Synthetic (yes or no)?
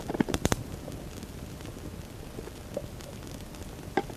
no